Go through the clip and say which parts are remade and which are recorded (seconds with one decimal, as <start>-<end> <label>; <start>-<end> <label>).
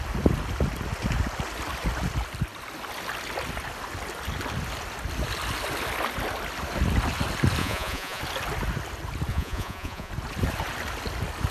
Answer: 0.0-7.6 recorded; 7.6-8.2 remade; 8.2-9.3 recorded; 9.3-10.1 remade; 10.1-11.5 recorded